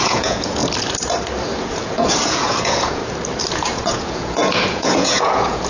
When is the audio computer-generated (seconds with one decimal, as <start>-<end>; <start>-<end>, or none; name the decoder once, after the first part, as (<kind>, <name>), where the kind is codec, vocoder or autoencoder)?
0.0-0.6 (vocoder, Vocos); 1.6-3.0; 3.5-5.7